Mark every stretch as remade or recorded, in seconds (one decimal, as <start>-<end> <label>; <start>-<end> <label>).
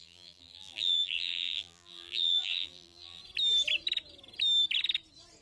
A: 0.0-3.2 remade; 3.2-5.4 recorded